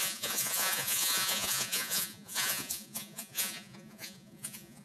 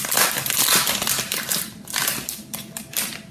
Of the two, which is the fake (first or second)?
first